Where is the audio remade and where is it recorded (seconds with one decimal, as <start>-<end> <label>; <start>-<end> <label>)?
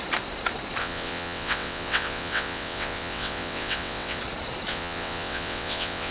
0.0-0.8 recorded; 0.8-4.2 remade; 4.2-4.7 recorded; 4.7-6.1 remade